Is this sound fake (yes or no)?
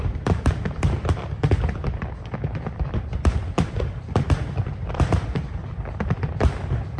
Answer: yes